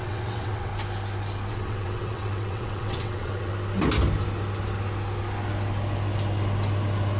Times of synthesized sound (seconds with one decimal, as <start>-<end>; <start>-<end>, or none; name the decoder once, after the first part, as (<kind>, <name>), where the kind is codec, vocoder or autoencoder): 0.0-0.7 (vocoder, WaveNeXt); 1.5-3.5